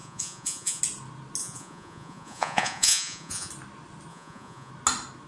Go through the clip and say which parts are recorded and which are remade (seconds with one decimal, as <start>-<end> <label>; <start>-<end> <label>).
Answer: 0.0-0.8 remade; 0.8-1.4 recorded; 1.4-3.5 remade; 3.5-4.1 recorded; 4.1-4.7 remade; 4.7-5.3 recorded